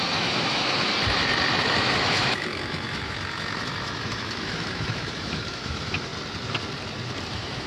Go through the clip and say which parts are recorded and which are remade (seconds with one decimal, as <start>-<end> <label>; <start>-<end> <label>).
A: 0.0-0.9 remade; 0.9-1.6 recorded; 1.6-6.1 remade; 6.1-7.3 recorded; 7.3-7.7 remade